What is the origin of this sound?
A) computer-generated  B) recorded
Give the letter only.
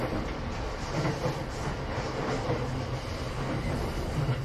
B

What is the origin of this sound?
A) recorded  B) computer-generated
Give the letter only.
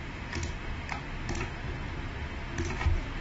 A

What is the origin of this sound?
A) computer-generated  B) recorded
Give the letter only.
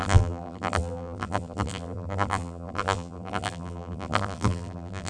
A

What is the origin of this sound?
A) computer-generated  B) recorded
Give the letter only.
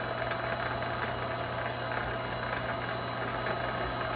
B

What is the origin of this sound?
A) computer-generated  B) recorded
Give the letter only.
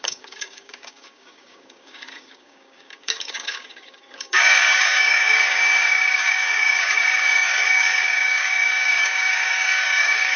A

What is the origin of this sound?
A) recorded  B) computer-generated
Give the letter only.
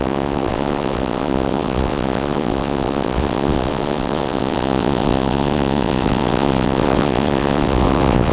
B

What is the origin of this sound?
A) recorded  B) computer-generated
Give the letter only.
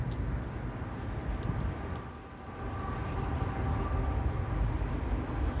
A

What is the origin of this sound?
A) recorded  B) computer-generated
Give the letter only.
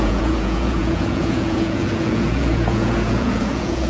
B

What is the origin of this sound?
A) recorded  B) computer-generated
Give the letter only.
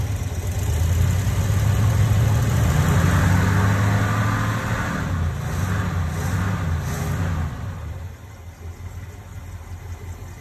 A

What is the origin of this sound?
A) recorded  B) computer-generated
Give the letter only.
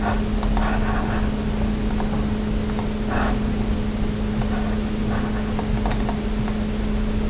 A